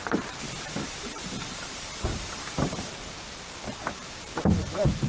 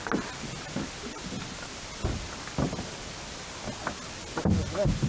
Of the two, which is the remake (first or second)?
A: first